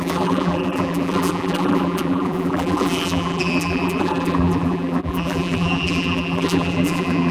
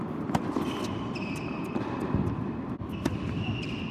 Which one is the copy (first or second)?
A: first